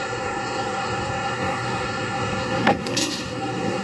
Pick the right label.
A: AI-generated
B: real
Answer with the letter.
A